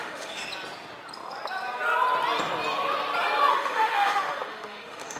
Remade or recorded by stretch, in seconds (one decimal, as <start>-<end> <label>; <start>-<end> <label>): 0.0-0.4 remade; 0.4-3.5 recorded; 3.5-5.2 remade